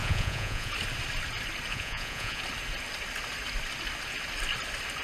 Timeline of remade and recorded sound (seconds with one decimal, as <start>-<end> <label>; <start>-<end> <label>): 0.0-0.7 remade; 0.7-1.7 recorded; 1.7-2.4 remade; 2.4-5.0 recorded